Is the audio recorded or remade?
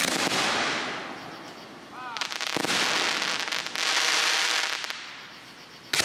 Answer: recorded